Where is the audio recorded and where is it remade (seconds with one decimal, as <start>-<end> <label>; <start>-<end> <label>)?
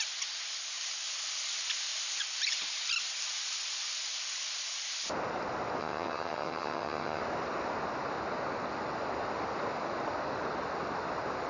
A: 0.0-5.8 recorded; 5.8-7.2 remade; 7.2-11.5 recorded